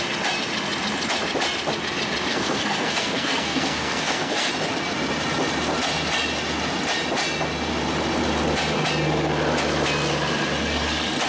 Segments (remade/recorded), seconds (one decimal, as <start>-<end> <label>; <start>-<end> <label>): 0.0-2.3 recorded; 2.3-4.5 remade; 4.5-11.3 recorded